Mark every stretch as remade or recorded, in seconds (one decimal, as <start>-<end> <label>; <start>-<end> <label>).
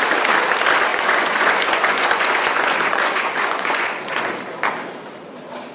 0.0-0.9 recorded; 0.9-4.3 remade; 4.3-5.7 recorded